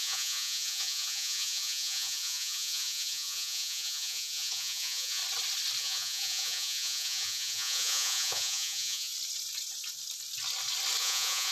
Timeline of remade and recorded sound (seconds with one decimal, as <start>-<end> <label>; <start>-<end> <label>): 0.0-5.2 remade; 5.2-5.8 recorded; 5.8-9.1 remade; 9.1-11.0 recorded; 11.0-11.5 remade